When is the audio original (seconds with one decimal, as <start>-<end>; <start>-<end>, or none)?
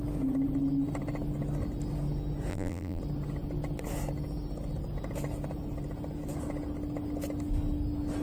0.0-2.5; 3.0-8.2